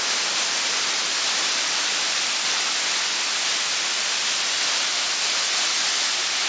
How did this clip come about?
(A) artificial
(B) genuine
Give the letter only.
B